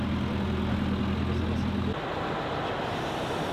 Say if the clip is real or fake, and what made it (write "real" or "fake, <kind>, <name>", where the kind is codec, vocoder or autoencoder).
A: real